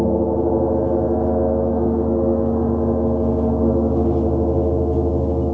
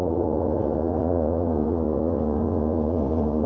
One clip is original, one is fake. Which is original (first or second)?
first